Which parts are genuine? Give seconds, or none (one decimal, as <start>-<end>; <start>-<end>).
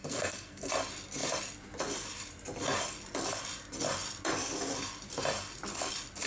0.7-6.3